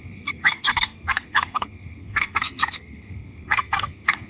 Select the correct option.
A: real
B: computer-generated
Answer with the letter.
B